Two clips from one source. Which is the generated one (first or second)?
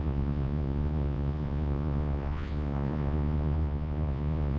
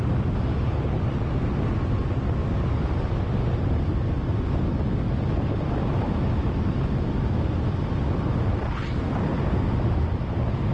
first